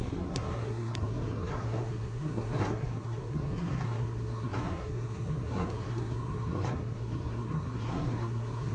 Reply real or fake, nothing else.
fake